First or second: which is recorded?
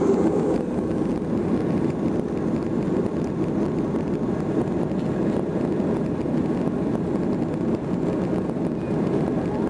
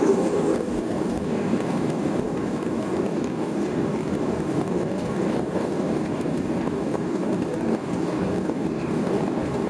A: first